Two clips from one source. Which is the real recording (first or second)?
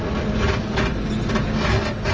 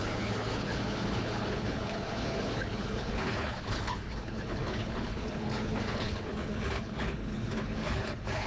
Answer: first